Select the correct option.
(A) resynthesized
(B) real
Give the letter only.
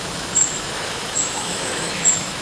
A